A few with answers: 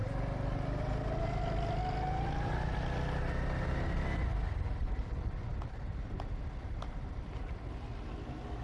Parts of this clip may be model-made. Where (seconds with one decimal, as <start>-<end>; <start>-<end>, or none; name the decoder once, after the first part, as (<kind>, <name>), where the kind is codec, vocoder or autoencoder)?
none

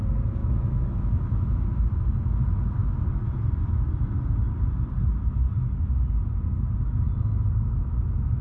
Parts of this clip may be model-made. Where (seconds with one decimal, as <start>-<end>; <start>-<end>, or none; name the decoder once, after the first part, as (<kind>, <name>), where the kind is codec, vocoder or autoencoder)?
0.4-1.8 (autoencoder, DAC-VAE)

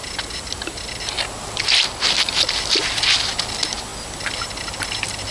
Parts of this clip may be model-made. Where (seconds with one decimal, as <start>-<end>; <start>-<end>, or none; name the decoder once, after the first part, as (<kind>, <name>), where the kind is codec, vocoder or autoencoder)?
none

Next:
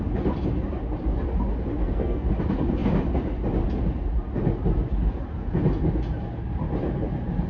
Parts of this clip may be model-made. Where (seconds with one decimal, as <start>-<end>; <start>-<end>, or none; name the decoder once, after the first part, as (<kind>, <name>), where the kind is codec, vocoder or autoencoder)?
1.8-2.3 (codec, SNAC)

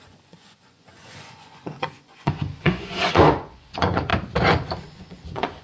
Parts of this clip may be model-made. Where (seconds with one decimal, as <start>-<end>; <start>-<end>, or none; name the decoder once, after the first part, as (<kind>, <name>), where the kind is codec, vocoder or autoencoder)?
0.0-4.1 (vocoder, Vocos); 4.8-5.6

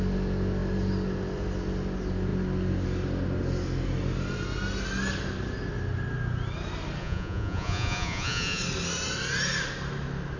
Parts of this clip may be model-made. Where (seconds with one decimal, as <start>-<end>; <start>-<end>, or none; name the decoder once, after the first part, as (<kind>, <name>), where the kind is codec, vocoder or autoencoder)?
7.0-8.6 (vocoder, Vocos)